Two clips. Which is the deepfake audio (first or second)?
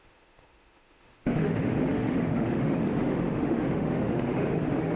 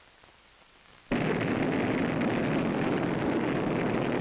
first